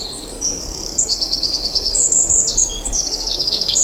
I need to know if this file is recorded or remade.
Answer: remade